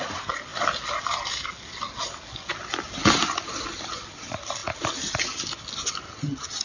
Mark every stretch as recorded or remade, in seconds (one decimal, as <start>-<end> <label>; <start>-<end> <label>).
0.0-6.6 recorded